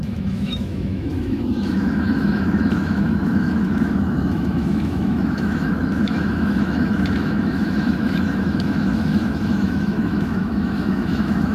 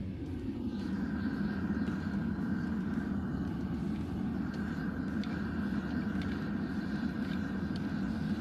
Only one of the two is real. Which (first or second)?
second